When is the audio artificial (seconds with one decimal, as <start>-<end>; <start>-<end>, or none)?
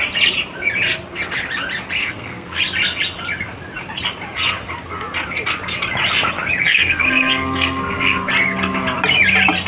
2.0-2.6; 6.6-8.3